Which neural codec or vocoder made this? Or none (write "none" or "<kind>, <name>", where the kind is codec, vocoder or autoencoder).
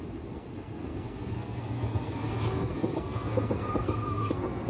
codec, SNAC